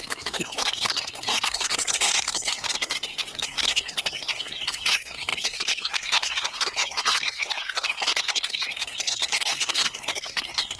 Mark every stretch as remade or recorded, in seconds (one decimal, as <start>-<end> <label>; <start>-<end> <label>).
0.0-10.8 remade